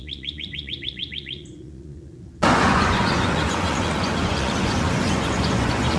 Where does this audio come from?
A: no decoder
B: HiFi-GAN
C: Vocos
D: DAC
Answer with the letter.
C